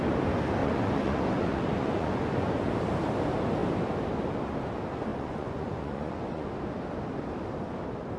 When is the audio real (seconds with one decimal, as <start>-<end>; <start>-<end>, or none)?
0.0-0.6; 2.7-5.1; 6.5-8.2